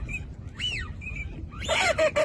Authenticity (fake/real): real